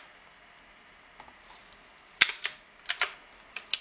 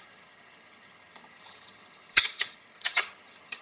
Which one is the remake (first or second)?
second